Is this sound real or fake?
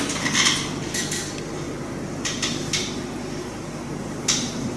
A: real